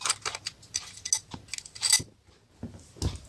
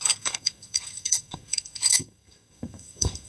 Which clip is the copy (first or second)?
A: second